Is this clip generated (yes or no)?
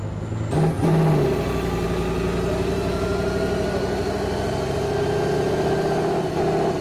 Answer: no